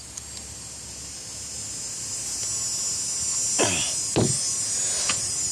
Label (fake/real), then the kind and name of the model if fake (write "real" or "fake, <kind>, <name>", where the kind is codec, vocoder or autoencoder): real